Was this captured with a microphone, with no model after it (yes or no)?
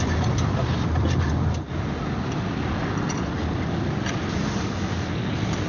yes